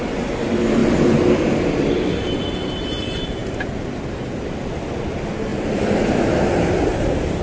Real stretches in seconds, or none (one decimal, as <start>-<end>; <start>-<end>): 0.0-7.4